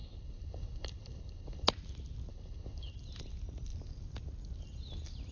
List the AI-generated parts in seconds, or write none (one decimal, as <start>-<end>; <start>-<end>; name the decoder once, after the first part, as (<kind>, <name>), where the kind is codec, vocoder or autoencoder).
0.0-1.7 (codec, HILCodec); 2.3-2.9